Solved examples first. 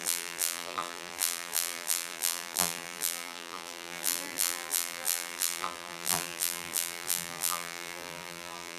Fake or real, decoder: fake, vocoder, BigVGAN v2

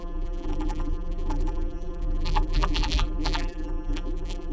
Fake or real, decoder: fake, vocoder, BigVGAN v2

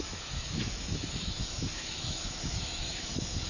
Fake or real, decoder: fake, autoencoder, DAC-VAE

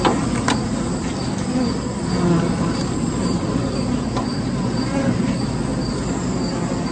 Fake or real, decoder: real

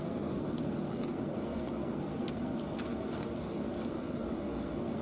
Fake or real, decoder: fake, codec, SNAC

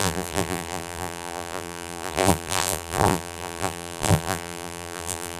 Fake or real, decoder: fake, vocoder, BigVGAN v2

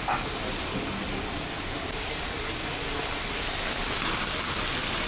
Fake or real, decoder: real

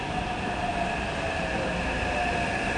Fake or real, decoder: real